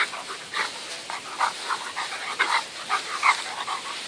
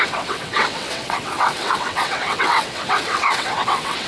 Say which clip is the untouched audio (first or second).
first